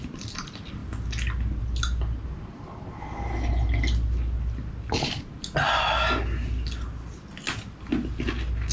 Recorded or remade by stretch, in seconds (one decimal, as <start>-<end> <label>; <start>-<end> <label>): 0.0-8.7 recorded